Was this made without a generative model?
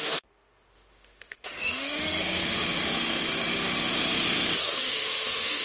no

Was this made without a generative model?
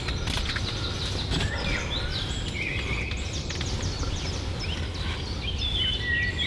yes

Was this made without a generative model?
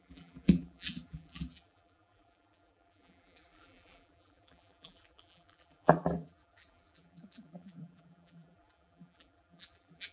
no